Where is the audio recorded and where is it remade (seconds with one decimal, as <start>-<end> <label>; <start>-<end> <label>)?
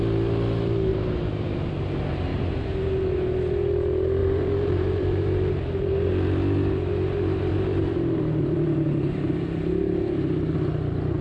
0.0-0.9 recorded; 0.9-1.7 remade; 1.7-2.3 recorded; 2.3-2.9 remade; 2.9-4.2 recorded; 4.2-6.1 remade; 6.1-7.5 recorded; 7.5-9.3 remade; 9.3-11.2 recorded